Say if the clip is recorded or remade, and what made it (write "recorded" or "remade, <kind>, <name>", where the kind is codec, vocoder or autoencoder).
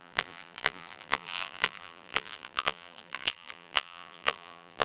remade, vocoder, BigVGAN v2